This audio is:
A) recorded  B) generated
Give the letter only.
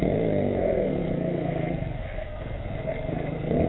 B